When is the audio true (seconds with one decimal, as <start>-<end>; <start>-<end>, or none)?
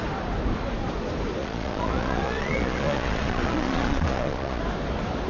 0.0-1.4; 4.6-5.3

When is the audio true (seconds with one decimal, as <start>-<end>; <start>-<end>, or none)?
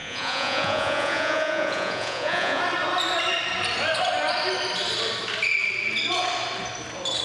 2.6-7.2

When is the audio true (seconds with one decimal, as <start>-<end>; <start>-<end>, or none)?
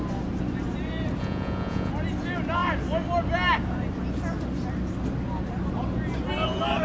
0.0-1.2; 1.9-6.8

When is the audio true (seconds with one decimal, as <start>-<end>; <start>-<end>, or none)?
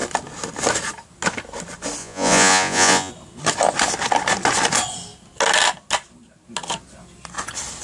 0.0-2.0; 3.1-7.8